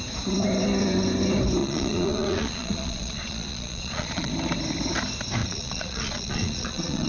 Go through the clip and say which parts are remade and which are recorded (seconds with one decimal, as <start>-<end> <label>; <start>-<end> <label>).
0.0-1.6 recorded; 1.6-4.3 remade; 4.3-5.4 recorded; 5.4-7.1 remade